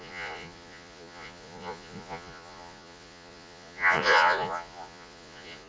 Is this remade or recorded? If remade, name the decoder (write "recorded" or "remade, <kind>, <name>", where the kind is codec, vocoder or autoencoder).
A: remade, vocoder, Vocos